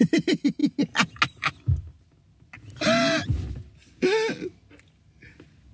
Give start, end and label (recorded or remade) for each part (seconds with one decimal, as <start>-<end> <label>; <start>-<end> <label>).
0.0-5.7 recorded